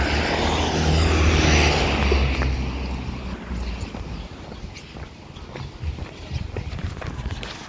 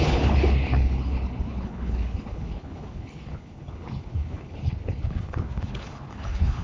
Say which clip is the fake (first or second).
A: second